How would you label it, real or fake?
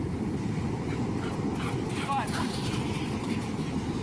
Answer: real